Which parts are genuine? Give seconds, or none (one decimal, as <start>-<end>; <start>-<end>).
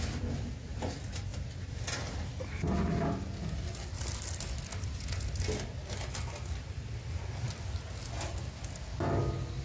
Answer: 0.0-9.6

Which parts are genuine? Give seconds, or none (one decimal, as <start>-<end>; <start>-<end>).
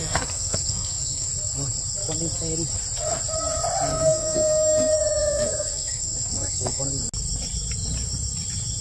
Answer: 1.3-3.9; 6.8-8.8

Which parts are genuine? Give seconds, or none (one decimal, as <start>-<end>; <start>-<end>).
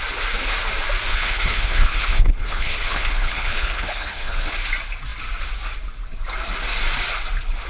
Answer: 0.0-1.1; 4.5-7.7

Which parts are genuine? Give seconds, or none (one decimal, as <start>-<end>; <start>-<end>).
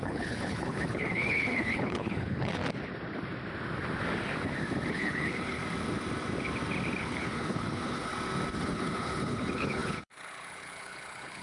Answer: 2.6-4.9; 5.6-7.0; 8.1-8.6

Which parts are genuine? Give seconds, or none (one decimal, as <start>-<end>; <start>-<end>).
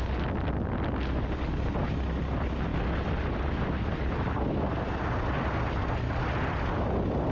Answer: 0.0-7.3